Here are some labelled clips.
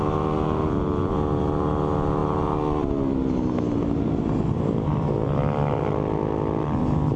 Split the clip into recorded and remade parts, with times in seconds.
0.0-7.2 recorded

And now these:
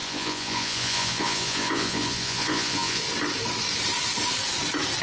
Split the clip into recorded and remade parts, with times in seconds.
0.0-3.0 remade; 3.0-5.0 recorded

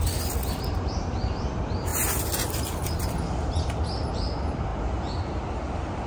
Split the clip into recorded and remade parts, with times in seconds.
0.0-6.1 recorded

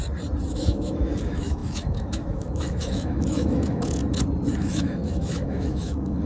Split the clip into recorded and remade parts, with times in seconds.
0.0-0.5 recorded; 0.5-4.0 remade; 4.0-4.6 recorded; 4.6-6.3 remade

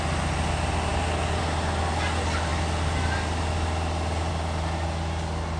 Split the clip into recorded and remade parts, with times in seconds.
0.0-5.6 recorded

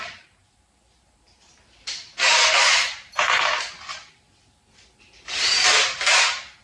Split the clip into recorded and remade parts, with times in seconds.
0.0-6.6 recorded

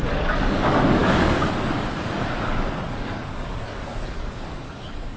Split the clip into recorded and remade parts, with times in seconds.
0.0-5.2 remade

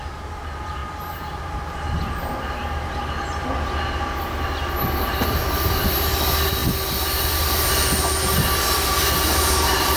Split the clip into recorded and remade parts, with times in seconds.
0.0-10.0 recorded